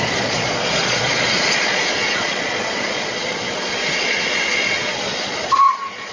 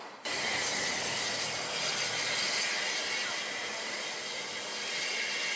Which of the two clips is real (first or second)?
second